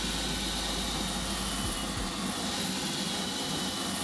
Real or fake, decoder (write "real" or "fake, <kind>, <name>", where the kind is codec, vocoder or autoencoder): real